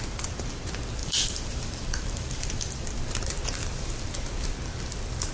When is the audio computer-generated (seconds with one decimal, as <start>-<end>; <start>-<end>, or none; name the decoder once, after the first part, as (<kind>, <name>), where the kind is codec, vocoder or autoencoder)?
1.0-3.0 (vocoder, BigVGAN v2)